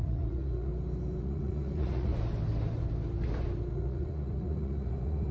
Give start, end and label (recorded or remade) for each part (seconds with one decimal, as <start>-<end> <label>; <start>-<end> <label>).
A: 0.0-0.7 remade; 0.7-1.2 recorded; 1.2-2.1 remade; 2.1-3.7 recorded; 3.7-5.3 remade